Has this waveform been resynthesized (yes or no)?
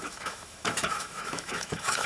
yes